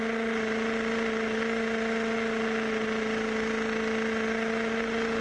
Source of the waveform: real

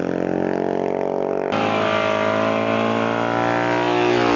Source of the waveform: real